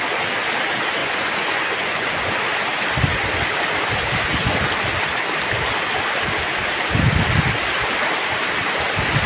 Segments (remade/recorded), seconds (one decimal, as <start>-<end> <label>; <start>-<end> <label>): 0.0-1.0 recorded; 1.0-2.4 remade; 2.4-9.3 recorded